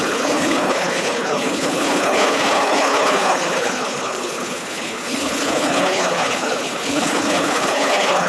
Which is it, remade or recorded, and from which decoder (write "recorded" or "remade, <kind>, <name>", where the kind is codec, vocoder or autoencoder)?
remade, codec, HILCodec